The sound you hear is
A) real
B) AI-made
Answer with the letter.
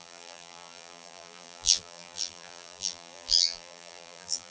B